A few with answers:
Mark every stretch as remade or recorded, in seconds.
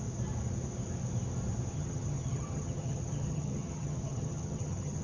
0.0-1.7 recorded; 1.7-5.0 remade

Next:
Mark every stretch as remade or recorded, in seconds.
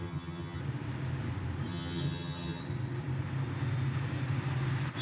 0.0-0.6 remade; 0.6-1.7 recorded; 1.7-2.6 remade; 2.6-5.0 recorded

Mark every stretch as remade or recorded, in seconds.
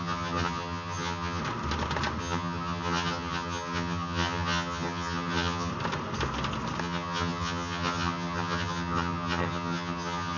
0.0-1.4 remade; 1.4-2.2 recorded; 2.2-5.7 remade; 5.7-6.8 recorded; 6.8-10.4 remade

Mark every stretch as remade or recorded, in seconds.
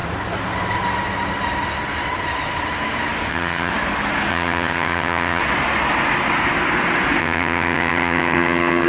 0.0-3.3 recorded; 3.3-3.7 remade; 3.7-4.3 recorded; 4.3-5.4 remade; 5.4-7.2 recorded; 7.2-8.9 remade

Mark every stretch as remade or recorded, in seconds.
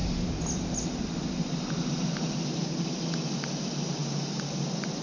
0.0-5.0 recorded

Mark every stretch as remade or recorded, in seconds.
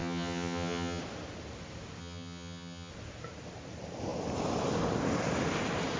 0.0-1.0 remade; 1.0-2.0 recorded; 2.0-2.9 remade; 2.9-6.0 recorded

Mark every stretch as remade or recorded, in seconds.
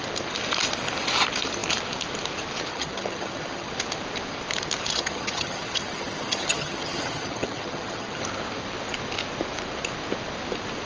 0.0-2.7 recorded; 2.7-3.7 remade; 3.7-4.9 recorded; 4.9-8.2 remade; 8.2-10.9 recorded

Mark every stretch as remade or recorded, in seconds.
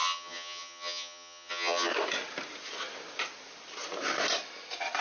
0.0-1.9 remade; 1.9-5.0 recorded